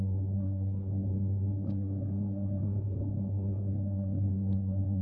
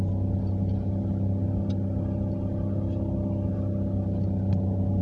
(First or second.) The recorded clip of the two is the second